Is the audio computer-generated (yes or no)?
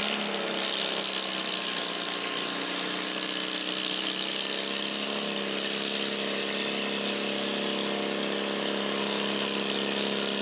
no